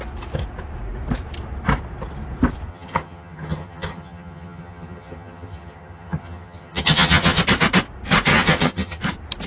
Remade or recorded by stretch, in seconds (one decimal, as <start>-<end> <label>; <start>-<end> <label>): 0.0-2.7 recorded; 2.7-7.4 remade; 7.4-8.3 recorded; 8.3-9.0 remade; 9.0-9.5 recorded